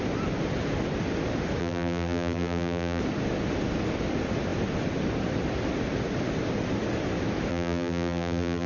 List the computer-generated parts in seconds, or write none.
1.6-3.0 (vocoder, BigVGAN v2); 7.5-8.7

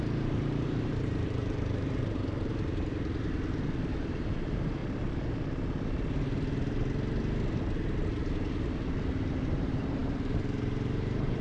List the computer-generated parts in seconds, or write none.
0.0-2.5 (vocoder, BigVGAN v2); 4.0-4.8; 9.4-11.4

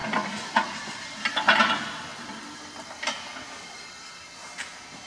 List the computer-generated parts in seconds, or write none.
0.0-1.6 (vocoder, BigVGAN v2); 2.1-4.3